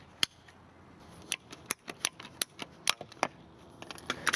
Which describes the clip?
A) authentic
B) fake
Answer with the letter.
A